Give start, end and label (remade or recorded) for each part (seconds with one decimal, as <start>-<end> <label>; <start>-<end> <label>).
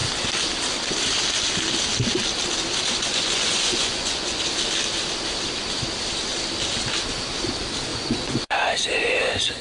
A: 0.0-3.1 recorded; 3.1-4.4 remade; 4.4-7.9 recorded; 7.9-9.6 remade